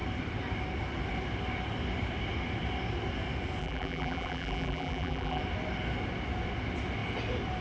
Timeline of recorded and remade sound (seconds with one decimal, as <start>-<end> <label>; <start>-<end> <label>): 0.0-3.6 recorded; 3.6-5.4 remade; 5.4-7.6 recorded